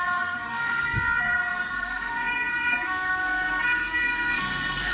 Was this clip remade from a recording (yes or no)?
yes